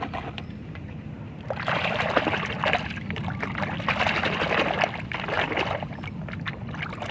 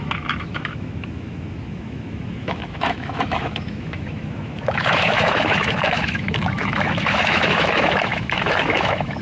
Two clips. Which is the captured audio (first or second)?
first